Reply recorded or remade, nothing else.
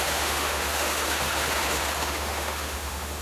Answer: remade